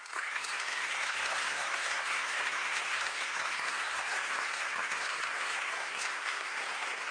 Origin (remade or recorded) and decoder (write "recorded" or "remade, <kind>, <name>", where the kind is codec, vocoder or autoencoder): remade, codec, SNAC